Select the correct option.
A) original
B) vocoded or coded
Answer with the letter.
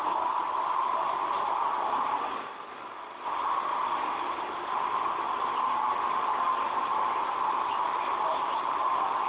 A